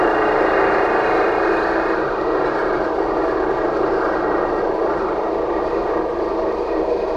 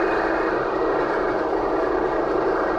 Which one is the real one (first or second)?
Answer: first